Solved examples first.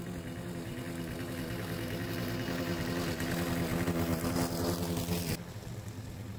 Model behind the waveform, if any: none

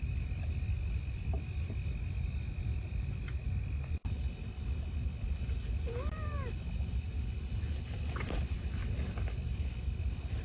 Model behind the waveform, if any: none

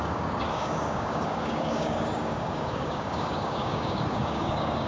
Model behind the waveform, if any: codec, DAC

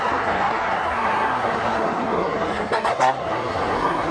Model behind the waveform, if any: codec, SNAC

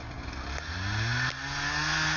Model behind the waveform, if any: none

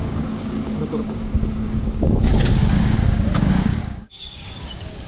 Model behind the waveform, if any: codec, DAC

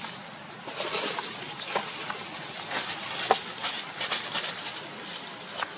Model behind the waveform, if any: vocoder, BigVGAN v2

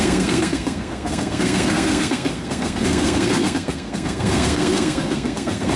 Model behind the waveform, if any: codec, SNAC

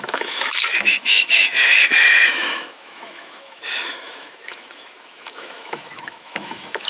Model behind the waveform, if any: autoencoder, DAC-VAE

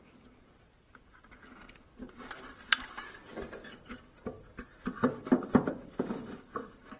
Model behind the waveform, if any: vocoder, BigVGAN v2